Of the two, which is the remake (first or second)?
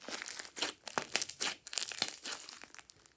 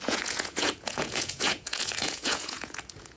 second